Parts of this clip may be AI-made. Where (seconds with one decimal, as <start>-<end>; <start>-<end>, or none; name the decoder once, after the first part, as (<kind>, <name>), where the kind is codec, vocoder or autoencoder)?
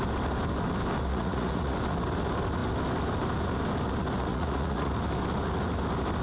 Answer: 1.1-1.8 (vocoder, Vocos); 4.3-4.9